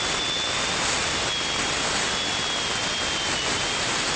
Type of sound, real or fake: real